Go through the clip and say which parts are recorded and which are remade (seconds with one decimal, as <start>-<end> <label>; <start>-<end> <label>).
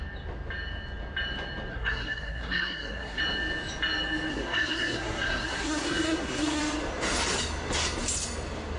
0.0-1.7 recorded; 1.7-3.2 remade; 3.2-4.3 recorded; 4.3-6.6 remade; 6.6-8.8 recorded